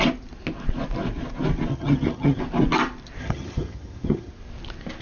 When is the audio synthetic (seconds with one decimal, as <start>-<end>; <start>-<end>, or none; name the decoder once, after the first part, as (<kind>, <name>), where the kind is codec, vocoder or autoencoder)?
1.7-2.4 (vocoder, HiFi-GAN); 3.2-4.3